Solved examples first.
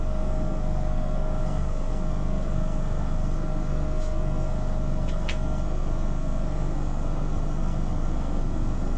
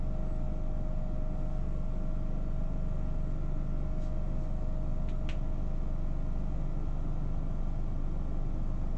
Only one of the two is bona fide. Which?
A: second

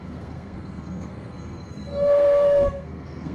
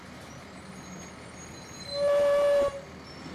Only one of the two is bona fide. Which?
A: second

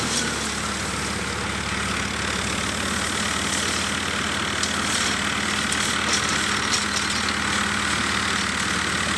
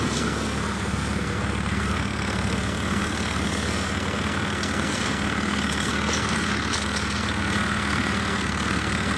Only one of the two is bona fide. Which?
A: first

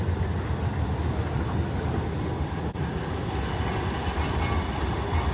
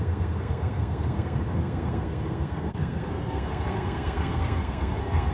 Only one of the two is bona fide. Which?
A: first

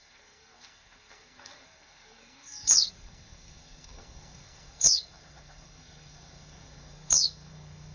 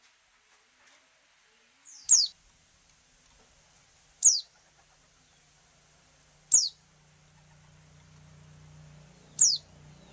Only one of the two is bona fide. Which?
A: second